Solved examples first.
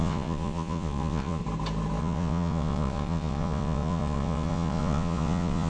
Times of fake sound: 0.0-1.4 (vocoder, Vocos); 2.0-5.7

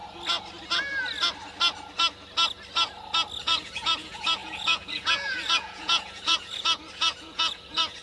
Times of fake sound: 3.4-8.0 (vocoder, Vocos)